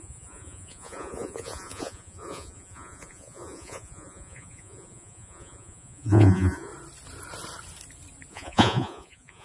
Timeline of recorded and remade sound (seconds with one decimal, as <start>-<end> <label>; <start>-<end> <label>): 0.0-6.7 remade; 6.7-8.3 recorded; 8.3-9.4 remade